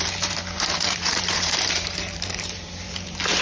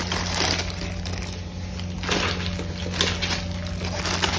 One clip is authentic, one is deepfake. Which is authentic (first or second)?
second